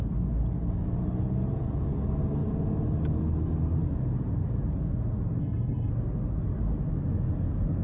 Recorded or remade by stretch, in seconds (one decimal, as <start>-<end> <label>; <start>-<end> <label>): 0.0-5.4 recorded; 5.4-5.9 remade; 5.9-7.8 recorded

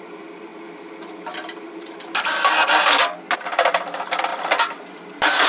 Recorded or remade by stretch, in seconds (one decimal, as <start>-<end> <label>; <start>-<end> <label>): 0.0-5.5 recorded